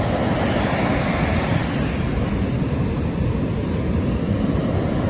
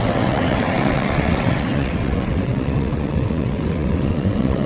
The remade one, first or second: second